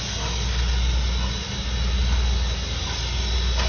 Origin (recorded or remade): recorded